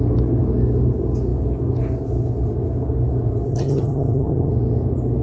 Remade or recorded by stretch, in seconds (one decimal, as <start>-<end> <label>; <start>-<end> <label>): 0.0-3.5 recorded; 3.5-4.5 remade; 4.5-5.2 recorded